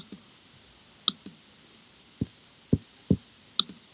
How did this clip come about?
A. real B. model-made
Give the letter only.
A